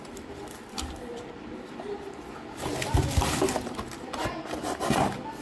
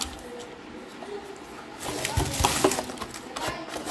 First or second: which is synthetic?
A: first